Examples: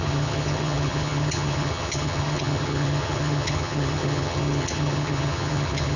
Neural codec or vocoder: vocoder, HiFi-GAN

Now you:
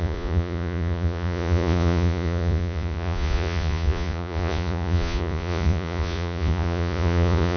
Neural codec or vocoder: vocoder, Vocos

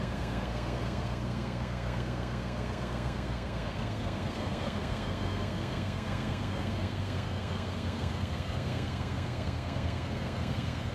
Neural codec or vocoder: codec, SNAC